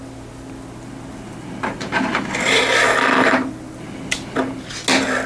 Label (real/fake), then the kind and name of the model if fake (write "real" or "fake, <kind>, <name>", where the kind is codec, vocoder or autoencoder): real